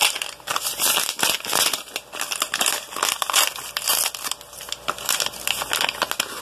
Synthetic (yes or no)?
no